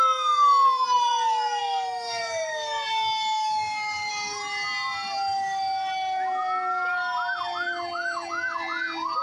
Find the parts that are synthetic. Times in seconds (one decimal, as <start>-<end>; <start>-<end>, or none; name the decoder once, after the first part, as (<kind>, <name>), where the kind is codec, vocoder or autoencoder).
1.1-4.1 (codec, DAC)